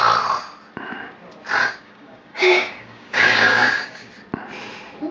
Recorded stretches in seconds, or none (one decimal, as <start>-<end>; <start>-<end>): 0.0-1.6; 4.1-5.1